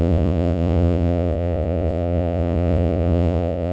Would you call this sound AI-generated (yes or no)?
yes